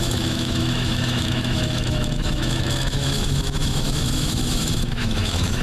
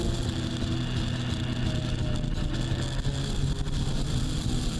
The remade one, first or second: first